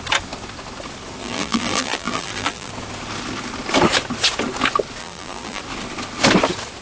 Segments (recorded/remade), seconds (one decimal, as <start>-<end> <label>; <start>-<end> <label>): 0.0-1.2 recorded; 1.2-2.7 remade; 2.7-5.0 recorded; 5.0-5.6 remade; 5.6-6.8 recorded